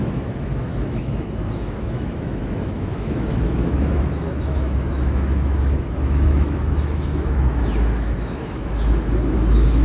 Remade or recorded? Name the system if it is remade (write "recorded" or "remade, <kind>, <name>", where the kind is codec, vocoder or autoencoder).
remade, autoencoder, DAC-VAE